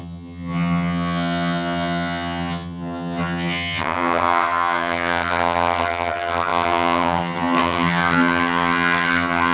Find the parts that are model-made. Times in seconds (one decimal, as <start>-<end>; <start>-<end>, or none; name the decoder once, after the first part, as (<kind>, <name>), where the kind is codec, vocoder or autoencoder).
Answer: 0.0-9.5 (vocoder, HiFi-GAN)